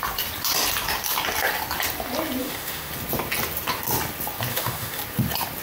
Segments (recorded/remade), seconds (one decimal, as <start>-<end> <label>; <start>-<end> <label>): 0.0-2.4 recorded; 2.4-2.9 remade; 2.9-4.5 recorded; 4.5-5.0 remade; 5.0-5.6 recorded